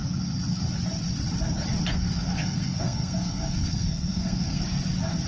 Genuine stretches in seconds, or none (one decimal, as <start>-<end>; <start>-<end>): 0.0-1.9; 4.6-5.3